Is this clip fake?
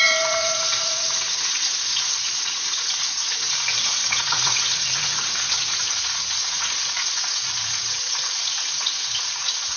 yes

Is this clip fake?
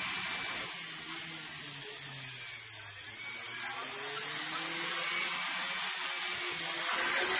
no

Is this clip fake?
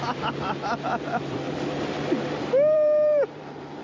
yes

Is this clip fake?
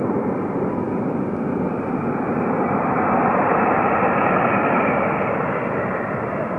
yes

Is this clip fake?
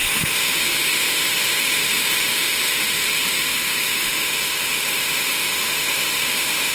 yes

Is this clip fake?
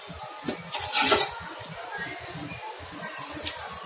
no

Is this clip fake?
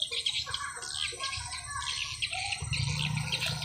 no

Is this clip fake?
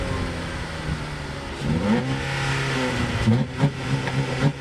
no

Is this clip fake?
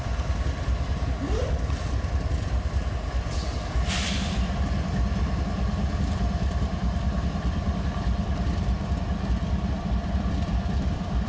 yes